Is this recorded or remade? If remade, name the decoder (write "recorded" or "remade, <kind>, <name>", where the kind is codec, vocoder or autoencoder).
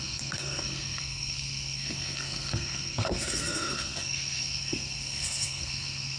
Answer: remade, codec, SNAC